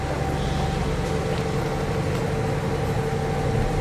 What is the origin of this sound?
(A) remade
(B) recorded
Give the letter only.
B